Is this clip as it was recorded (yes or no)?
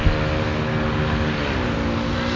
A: yes